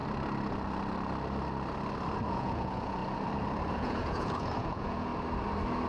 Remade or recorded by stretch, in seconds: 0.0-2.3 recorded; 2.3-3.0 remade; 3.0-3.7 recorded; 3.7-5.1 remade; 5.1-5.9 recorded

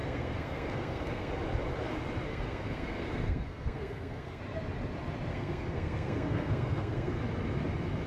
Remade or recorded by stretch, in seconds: 0.0-1.3 remade; 1.3-2.3 recorded; 2.3-4.4 remade; 4.4-5.3 recorded; 5.3-7.2 remade; 7.2-8.1 recorded

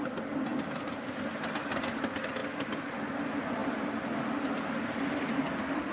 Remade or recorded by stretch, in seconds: 0.0-5.9 recorded

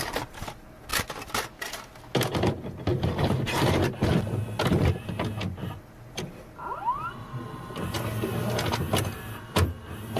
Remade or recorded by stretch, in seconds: 0.0-10.2 recorded